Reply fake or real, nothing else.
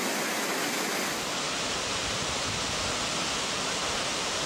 real